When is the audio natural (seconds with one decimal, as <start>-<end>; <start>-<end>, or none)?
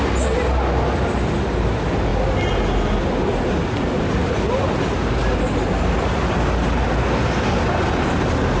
0.0-8.6